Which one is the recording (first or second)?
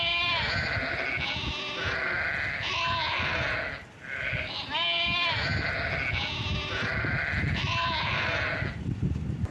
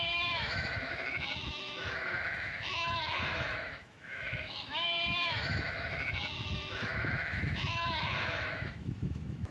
first